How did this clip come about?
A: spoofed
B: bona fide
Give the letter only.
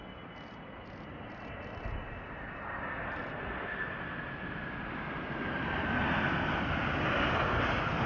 B